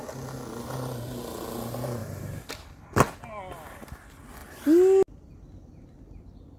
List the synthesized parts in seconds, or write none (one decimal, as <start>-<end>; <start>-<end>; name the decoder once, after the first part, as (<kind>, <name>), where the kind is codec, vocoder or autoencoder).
2.0-2.5 (vocoder, BigVGAN v2)